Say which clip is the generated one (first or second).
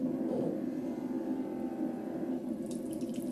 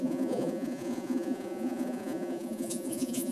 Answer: second